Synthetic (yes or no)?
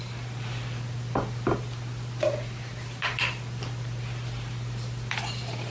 yes